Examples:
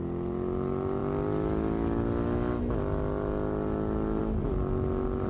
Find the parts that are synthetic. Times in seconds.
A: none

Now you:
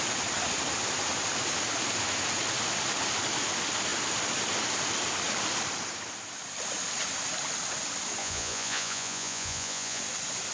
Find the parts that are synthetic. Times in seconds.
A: 8.2-10.0 (vocoder, Vocos)

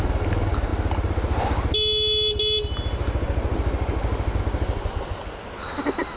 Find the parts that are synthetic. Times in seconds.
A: none